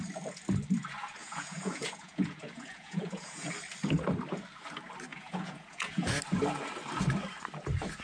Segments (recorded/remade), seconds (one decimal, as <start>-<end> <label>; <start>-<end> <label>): 0.0-1.2 recorded; 1.2-3.5 remade; 3.5-5.1 recorded; 5.1-6.1 remade; 6.1-8.0 recorded